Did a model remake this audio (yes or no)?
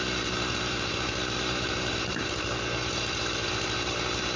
yes